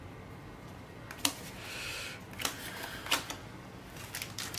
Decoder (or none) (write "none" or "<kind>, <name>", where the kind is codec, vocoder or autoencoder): none